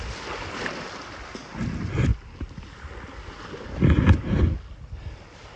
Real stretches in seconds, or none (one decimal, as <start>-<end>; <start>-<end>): 0.0-5.6